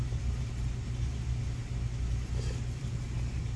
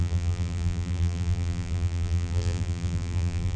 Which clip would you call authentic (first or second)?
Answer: first